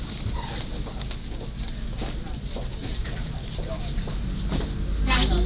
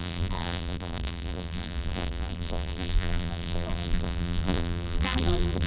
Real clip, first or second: first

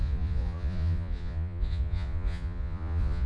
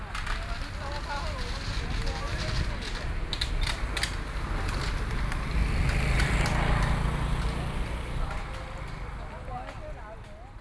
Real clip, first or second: second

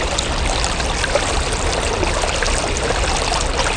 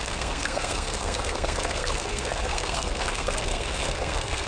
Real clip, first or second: first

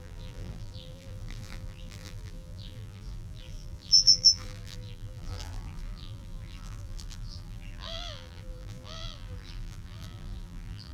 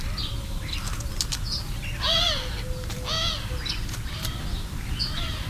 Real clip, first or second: second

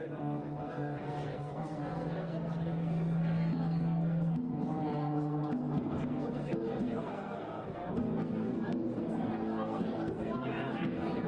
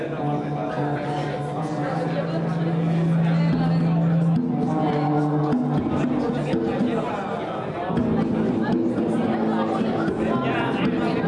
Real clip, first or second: second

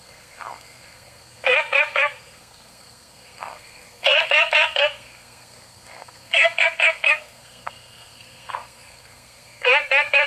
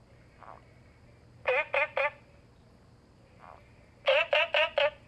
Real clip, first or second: second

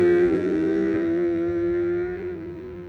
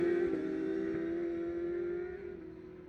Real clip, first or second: second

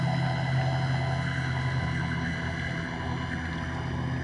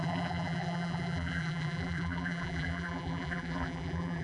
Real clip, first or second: first